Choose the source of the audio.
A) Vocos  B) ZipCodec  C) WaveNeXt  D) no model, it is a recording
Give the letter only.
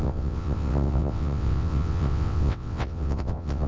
C